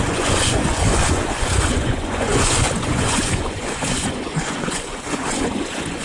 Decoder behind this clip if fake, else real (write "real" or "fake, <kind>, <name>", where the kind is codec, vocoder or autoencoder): fake, vocoder, Vocos